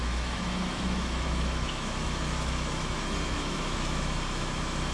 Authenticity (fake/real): fake